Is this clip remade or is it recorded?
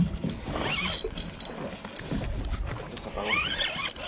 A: recorded